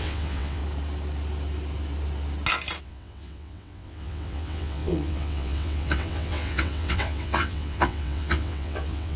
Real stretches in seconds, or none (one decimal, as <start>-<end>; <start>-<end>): 0.6-2.8